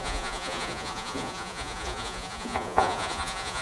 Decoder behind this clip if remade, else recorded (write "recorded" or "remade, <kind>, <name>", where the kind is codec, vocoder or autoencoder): remade, vocoder, Vocos